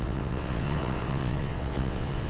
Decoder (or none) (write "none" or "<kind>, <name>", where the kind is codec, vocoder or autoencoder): vocoder, WaveNeXt